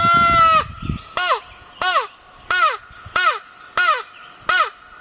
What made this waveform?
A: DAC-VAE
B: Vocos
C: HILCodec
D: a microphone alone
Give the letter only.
D